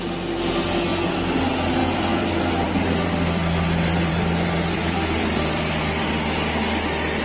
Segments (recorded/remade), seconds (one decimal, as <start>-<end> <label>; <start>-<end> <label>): 0.0-1.8 recorded; 1.8-6.1 remade; 6.1-7.2 recorded